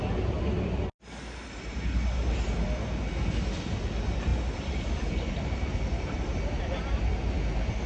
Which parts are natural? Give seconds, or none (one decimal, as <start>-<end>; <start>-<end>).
0.0-7.9